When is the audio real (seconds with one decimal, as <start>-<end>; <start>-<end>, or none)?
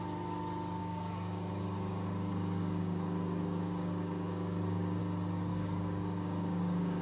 0.0-0.8; 5.0-5.5